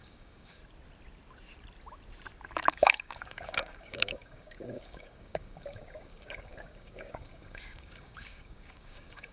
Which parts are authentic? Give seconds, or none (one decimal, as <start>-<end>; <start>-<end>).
0.6-2.7